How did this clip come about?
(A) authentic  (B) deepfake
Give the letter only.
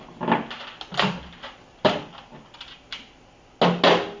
A